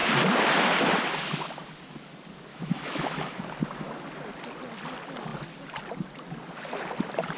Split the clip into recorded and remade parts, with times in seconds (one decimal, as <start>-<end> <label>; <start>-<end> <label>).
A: 0.0-2.5 recorded; 2.5-3.4 remade; 3.4-7.4 recorded

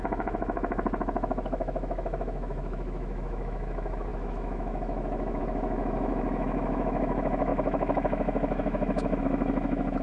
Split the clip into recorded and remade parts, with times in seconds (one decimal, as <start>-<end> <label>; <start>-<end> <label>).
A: 0.0-10.0 remade

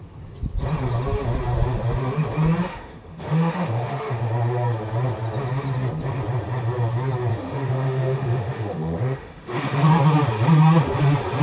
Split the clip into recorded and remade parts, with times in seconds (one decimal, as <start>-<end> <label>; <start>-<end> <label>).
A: 0.0-2.7 recorded; 2.7-4.2 remade; 4.2-7.3 recorded; 7.3-9.9 remade; 9.9-11.4 recorded

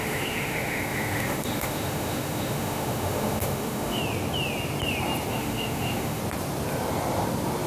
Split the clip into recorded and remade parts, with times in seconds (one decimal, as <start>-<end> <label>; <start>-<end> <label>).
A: 0.0-4.0 remade; 4.0-5.3 recorded; 5.3-6.2 remade; 6.2-7.7 recorded